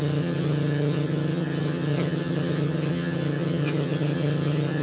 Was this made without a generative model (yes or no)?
no